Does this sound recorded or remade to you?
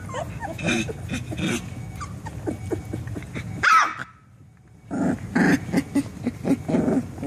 recorded